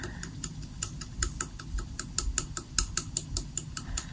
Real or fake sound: real